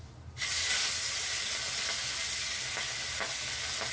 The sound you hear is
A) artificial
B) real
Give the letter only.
B